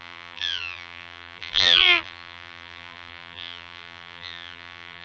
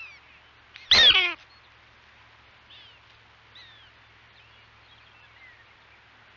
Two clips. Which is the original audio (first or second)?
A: second